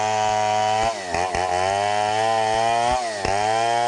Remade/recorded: recorded